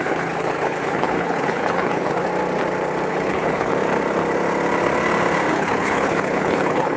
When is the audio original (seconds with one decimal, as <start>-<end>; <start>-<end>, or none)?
2.3-3.1; 3.7-5.5